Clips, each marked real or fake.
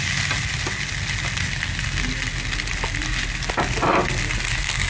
real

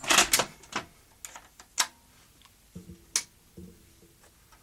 real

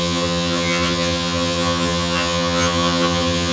fake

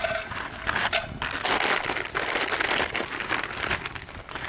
real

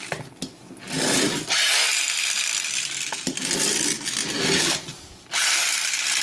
real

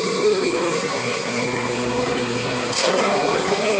fake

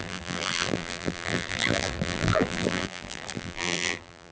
fake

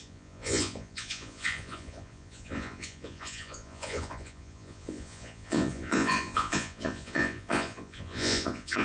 fake